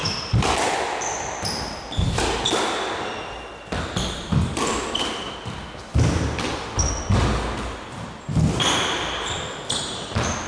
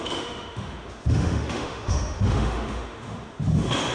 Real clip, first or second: first